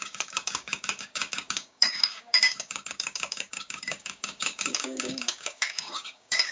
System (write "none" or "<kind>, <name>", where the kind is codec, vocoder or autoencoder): codec, DAC